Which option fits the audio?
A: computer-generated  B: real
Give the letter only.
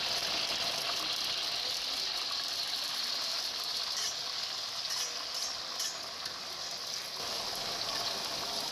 B